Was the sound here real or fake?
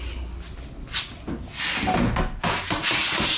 real